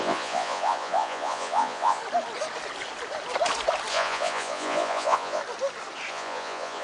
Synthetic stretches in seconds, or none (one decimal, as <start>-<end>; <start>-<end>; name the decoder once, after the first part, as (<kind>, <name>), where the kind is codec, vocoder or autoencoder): 0.0-2.0 (vocoder, Vocos); 3.9-5.4; 6.1-6.8